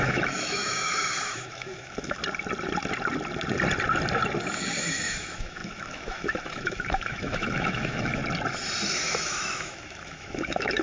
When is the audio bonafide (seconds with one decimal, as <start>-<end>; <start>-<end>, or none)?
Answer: 2.2-4.8; 8.2-9.0